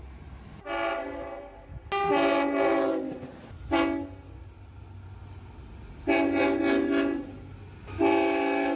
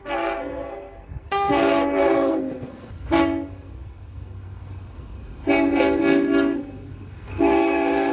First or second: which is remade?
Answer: second